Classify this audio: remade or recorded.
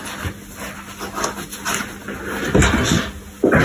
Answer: recorded